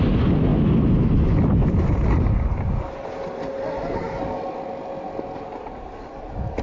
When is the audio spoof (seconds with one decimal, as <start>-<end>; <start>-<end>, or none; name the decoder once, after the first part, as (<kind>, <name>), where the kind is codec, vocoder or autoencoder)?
3.9-4.4 (codec, DAC)

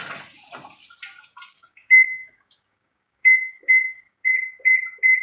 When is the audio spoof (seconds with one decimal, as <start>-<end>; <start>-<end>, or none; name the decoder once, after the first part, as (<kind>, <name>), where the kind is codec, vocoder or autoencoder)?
1.2-4.3 (codec, DAC)

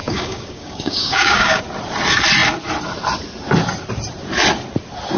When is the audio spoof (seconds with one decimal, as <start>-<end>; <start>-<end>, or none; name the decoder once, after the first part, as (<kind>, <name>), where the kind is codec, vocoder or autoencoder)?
0.0-1.6 (codec, DAC)